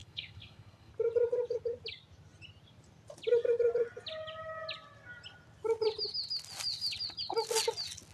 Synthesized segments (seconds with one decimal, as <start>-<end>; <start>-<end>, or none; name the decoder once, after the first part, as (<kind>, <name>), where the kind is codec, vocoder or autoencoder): 0.0-0.9 (codec, SNAC)

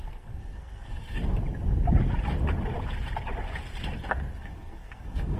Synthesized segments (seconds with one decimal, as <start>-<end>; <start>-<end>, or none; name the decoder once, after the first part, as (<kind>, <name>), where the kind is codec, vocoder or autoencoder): 0.0-1.2 (codec, SNAC); 4.4-5.4

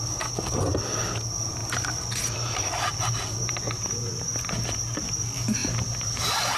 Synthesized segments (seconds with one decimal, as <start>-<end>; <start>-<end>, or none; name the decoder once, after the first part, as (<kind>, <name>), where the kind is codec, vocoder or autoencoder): none